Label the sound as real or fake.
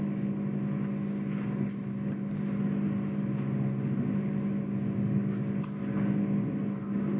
real